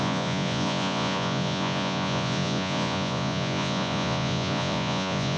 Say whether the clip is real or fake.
fake